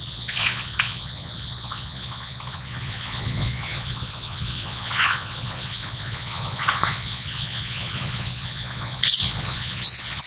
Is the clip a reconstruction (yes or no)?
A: yes